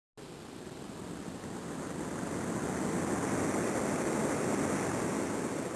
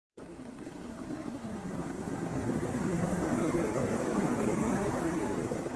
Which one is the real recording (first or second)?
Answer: first